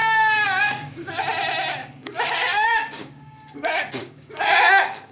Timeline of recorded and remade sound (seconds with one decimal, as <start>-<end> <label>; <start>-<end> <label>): 0.0-1.2 remade; 1.2-1.8 recorded; 1.8-5.1 remade